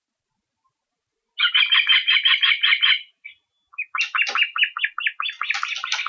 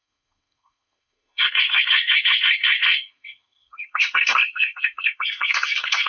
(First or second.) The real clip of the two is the first